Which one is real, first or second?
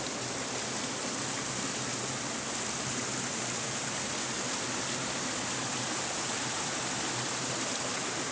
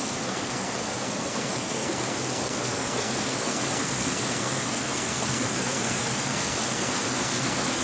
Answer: first